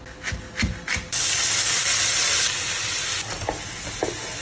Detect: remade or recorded recorded